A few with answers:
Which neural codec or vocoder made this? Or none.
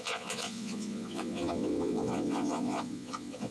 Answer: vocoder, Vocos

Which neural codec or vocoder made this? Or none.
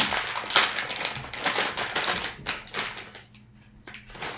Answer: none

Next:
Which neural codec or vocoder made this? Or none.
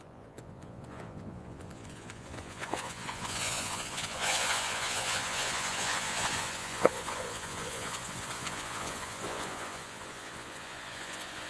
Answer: vocoder, Vocos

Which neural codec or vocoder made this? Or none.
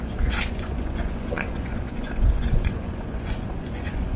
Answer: vocoder, Vocos